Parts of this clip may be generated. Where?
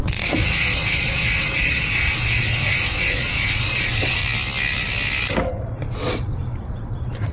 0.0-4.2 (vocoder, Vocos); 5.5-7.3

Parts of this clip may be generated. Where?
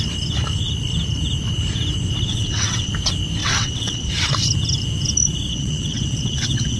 2.3-2.9 (vocoder, WaveNeXt); 3.4-4.1; 5.5-6.8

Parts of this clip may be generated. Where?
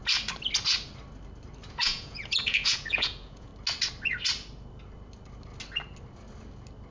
1.7-3.5 (vocoder, Vocos)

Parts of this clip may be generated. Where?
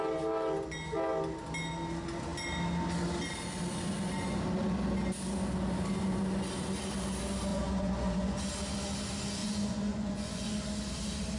7.5-8.4 (vocoder, Vocos); 9.4-10.5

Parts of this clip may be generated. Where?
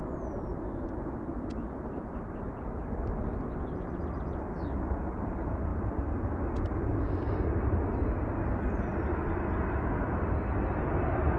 none